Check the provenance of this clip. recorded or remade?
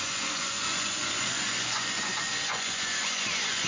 remade